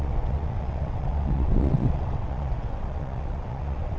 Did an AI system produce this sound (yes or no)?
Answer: yes